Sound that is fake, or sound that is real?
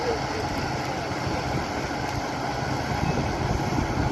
real